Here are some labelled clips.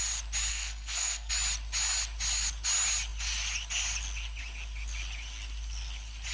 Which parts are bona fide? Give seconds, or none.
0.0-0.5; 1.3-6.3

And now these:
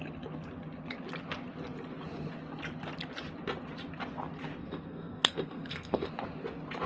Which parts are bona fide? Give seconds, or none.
0.0-4.6; 6.1-6.9

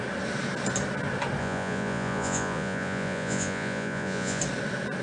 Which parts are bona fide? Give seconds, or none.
0.0-1.4; 4.4-5.0

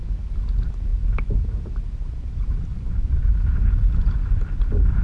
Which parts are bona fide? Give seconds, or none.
0.0-2.7; 3.3-5.0

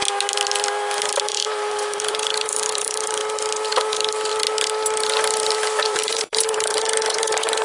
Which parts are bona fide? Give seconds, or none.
0.0-1.2; 3.2-3.7; 4.3-5.5

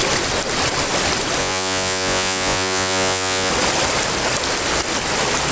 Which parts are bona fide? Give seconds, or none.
0.0-1.4; 3.5-5.5

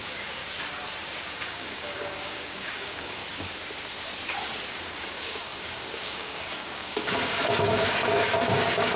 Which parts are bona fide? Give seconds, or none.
0.4-1.2; 3.2-4.7

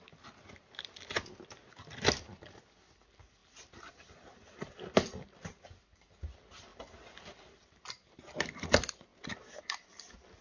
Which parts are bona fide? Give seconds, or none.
0.0-10.4